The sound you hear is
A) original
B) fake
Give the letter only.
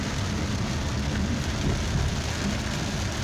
A